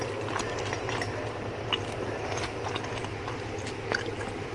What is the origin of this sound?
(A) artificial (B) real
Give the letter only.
B